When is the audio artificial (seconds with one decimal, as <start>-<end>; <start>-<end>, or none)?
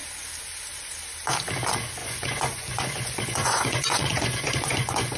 2.0-5.2